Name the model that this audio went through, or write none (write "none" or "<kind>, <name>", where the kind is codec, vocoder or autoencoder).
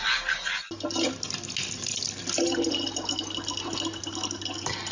none